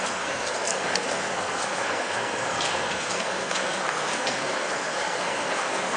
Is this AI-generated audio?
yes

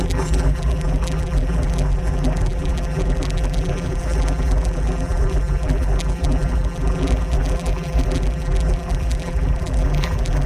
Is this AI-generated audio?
yes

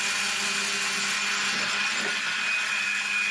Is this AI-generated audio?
no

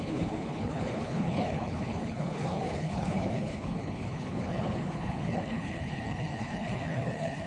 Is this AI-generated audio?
yes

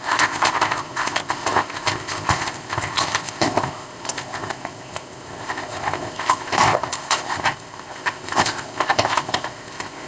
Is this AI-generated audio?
yes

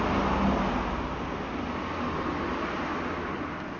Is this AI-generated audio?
no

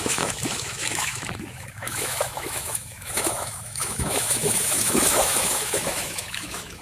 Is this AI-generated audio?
yes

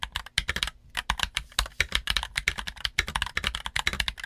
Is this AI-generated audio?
no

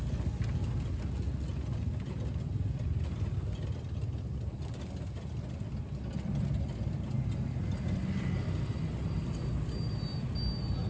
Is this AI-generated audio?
no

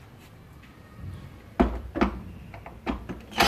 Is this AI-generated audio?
no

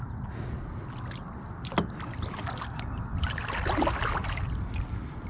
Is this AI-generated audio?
no